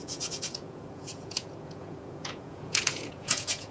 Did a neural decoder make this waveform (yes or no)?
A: yes